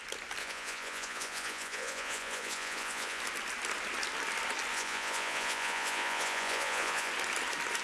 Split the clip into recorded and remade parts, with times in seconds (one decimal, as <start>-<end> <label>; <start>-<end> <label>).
0.0-0.4 recorded; 0.4-3.2 remade; 3.2-4.7 recorded; 4.7-7.1 remade; 7.1-7.8 recorded